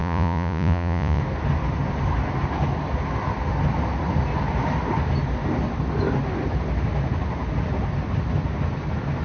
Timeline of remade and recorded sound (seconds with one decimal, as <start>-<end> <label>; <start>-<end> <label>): 0.0-1.2 remade; 1.2-9.2 recorded